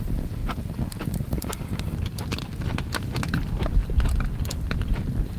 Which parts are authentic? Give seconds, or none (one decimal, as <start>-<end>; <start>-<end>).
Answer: 0.4-1.0; 2.3-4.4

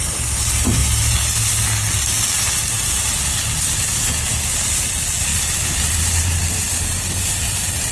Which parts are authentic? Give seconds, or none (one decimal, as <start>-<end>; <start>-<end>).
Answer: 0.0-7.9

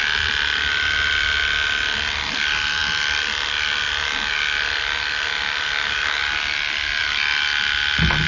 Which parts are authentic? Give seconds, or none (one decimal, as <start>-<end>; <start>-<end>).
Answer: 0.0-8.3

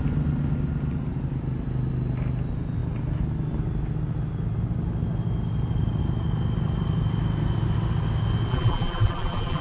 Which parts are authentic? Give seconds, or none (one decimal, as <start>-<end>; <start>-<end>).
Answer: 0.0-8.5

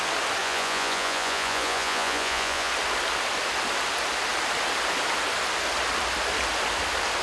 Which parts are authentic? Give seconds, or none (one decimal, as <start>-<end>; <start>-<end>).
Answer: 0.0-0.4; 2.7-7.2